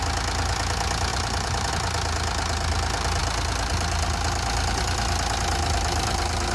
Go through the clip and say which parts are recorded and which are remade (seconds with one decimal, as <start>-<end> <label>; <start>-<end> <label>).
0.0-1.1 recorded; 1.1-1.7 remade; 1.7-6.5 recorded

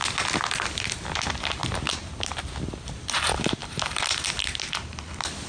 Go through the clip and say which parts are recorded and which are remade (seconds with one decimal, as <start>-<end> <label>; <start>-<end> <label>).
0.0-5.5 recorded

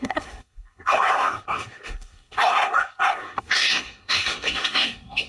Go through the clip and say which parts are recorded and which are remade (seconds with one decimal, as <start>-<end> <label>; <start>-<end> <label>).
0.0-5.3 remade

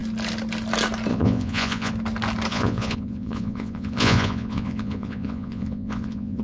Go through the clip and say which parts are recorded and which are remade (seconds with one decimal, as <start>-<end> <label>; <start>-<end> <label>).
0.0-1.1 recorded; 1.1-1.9 remade; 1.9-2.5 recorded; 2.5-6.4 remade

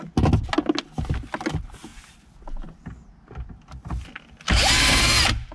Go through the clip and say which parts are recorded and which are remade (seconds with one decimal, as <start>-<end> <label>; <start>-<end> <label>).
0.0-5.5 recorded

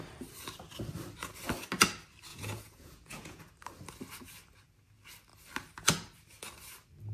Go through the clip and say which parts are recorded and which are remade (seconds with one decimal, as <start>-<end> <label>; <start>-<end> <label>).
0.0-2.3 recorded; 2.3-3.4 remade; 3.4-7.1 recorded

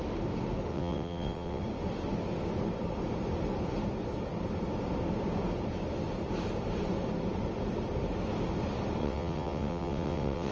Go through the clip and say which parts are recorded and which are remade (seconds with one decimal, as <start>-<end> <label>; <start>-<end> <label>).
0.0-0.7 recorded; 0.7-1.6 remade; 1.6-9.0 recorded; 9.0-10.5 remade

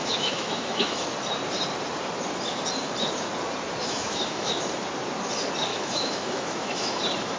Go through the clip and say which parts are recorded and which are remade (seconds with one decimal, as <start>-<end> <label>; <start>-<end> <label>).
0.0-1.0 remade; 1.0-3.8 recorded; 3.8-4.6 remade; 4.6-5.7 recorded; 5.7-7.0 remade; 7.0-7.4 recorded